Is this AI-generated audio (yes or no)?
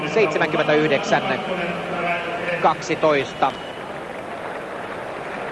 no